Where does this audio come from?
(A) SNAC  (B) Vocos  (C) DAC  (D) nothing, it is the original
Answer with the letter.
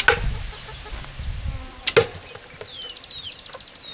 D